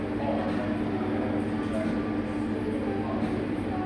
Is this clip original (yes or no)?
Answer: yes